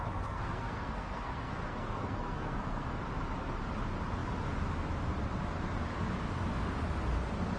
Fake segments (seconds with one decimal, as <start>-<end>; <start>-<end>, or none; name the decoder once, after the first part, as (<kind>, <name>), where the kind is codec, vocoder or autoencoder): 0.0-3.0 (codec, SNAC)